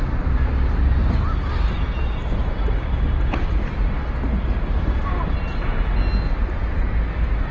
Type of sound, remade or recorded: recorded